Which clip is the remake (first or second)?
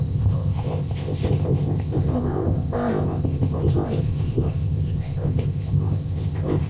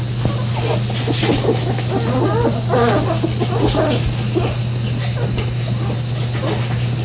first